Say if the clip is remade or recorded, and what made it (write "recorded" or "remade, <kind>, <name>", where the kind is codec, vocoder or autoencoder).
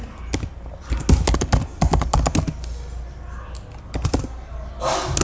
recorded